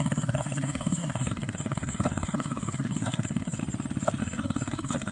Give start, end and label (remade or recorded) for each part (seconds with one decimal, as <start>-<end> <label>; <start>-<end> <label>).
0.0-3.6 remade; 3.6-4.2 recorded; 4.2-5.1 remade